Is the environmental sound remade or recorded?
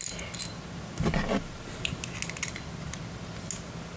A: recorded